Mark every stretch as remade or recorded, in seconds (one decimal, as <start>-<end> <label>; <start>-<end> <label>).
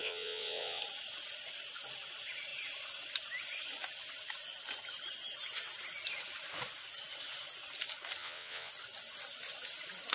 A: 0.0-0.8 remade; 0.8-8.2 recorded; 8.2-8.7 remade; 8.7-10.1 recorded